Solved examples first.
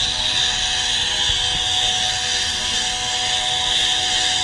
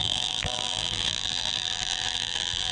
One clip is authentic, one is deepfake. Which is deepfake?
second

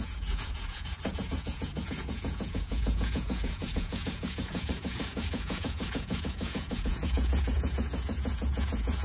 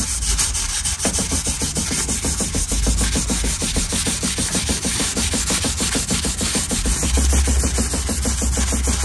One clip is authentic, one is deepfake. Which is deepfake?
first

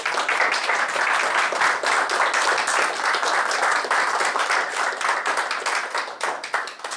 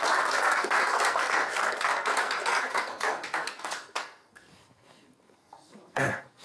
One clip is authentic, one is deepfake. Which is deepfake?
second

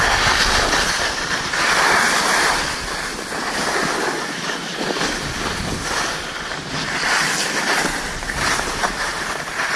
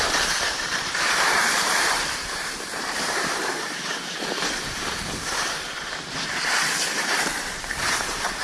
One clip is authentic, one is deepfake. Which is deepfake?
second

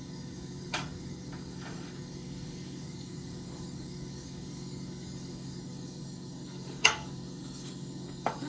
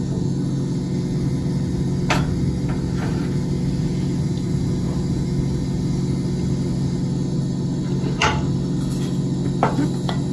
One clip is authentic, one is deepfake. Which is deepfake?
first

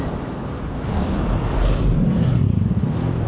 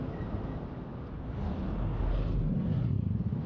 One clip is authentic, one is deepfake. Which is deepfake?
first